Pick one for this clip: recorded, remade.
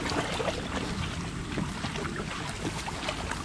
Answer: recorded